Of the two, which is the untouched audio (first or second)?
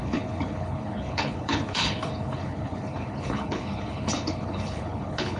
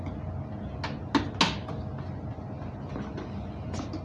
second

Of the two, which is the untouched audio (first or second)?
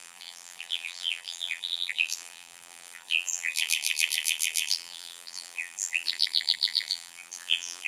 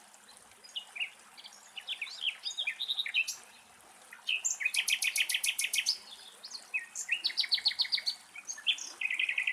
second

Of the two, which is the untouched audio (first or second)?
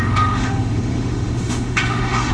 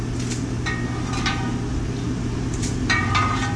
second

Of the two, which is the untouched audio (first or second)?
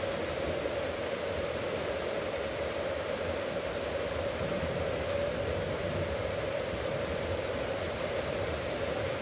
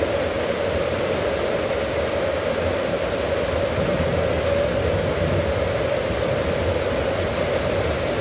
second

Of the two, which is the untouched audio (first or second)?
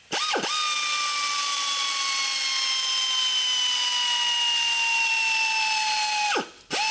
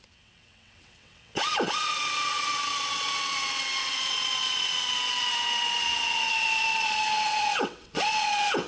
first